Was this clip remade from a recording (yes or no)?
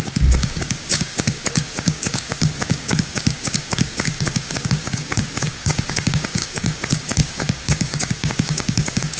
yes